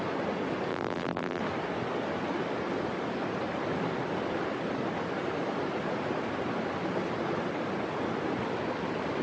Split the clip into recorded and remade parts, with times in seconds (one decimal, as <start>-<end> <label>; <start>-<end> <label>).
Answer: 0.0-0.7 recorded; 0.7-1.4 remade; 1.4-9.2 recorded